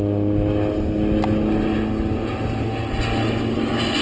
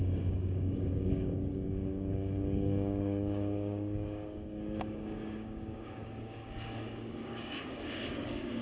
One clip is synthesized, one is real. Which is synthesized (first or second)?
second